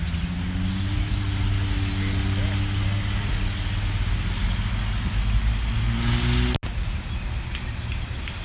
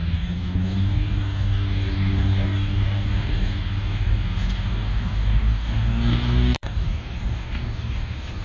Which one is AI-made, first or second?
second